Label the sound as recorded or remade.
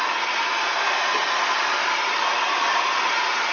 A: recorded